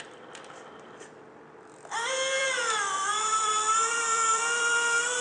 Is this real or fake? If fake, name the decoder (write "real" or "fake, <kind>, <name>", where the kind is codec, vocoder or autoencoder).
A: fake, vocoder, BigVGAN v2